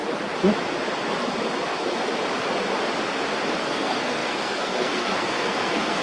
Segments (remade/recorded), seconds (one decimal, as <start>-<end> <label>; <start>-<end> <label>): 0.0-3.6 recorded; 3.6-6.0 remade